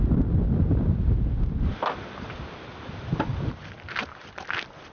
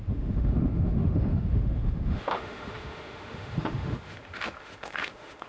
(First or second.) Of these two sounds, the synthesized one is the second